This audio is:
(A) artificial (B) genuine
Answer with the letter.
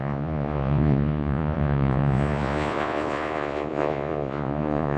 A